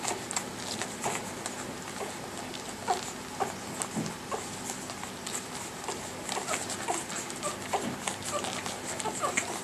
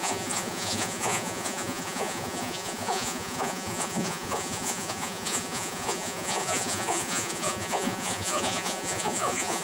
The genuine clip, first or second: first